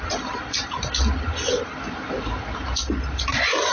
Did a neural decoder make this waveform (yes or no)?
no